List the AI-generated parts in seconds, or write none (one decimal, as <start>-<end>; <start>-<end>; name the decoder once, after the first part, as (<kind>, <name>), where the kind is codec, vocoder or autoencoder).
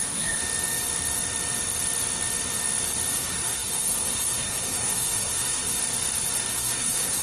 0.0-0.4 (codec, SNAC); 3.1-5.8; 6.5-7.2